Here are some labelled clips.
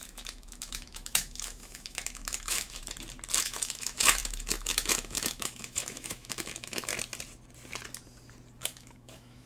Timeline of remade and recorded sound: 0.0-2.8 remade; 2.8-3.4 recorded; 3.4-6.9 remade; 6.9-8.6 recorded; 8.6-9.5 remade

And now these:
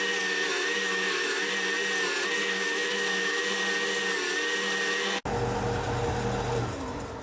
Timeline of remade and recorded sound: 0.0-0.5 recorded; 0.5-1.5 remade; 1.5-2.4 recorded; 2.4-3.4 remade; 3.4-7.2 recorded

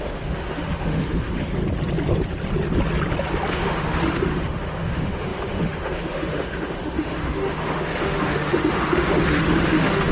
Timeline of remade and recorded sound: 0.0-1.6 remade; 1.6-3.5 recorded; 3.5-10.1 remade

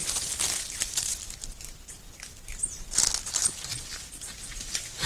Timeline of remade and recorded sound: 0.0-5.1 recorded

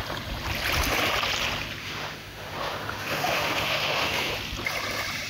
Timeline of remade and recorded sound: 0.0-1.8 recorded; 1.8-4.3 remade; 4.3-5.3 recorded

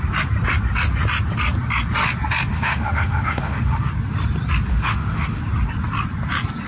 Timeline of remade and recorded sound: 0.0-2.5 recorded; 2.5-3.9 remade; 3.9-4.7 recorded; 4.7-5.4 remade; 5.4-6.7 recorded

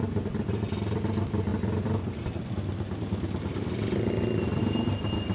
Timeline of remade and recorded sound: 0.0-5.3 recorded